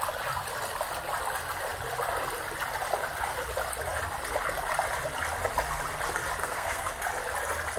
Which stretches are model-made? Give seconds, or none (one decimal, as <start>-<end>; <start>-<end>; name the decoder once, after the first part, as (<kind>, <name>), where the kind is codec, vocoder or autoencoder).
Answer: 6.4-6.9 (codec, SNAC)